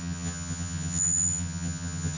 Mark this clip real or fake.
fake